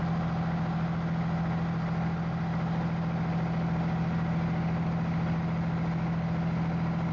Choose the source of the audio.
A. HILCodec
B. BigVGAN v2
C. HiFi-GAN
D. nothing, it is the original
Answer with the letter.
D